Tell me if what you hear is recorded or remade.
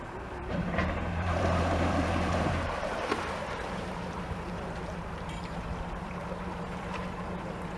remade